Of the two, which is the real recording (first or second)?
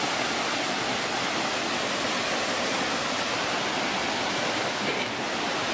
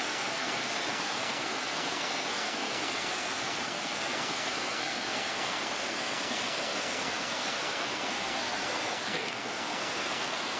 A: first